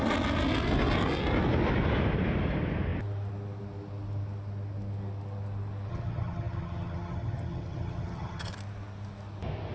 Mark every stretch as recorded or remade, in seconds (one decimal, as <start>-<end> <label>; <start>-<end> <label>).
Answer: 0.0-5.9 recorded; 5.9-8.5 remade; 8.5-9.7 recorded